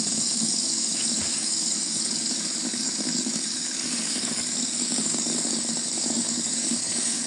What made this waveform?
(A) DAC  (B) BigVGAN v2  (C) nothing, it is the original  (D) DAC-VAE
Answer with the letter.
A